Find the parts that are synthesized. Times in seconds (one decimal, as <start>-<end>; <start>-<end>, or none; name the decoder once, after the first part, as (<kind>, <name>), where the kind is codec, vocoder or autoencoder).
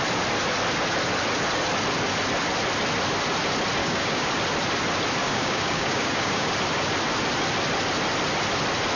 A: 3.8-4.3 (codec, DAC); 5.2-6.5